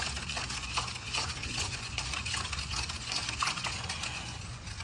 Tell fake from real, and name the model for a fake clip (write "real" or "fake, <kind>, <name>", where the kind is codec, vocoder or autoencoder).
fake, vocoder, Vocos